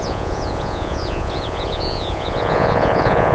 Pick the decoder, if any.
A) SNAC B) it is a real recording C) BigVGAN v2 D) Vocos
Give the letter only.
D